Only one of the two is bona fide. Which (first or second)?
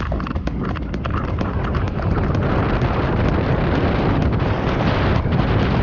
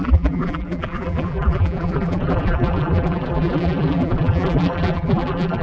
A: first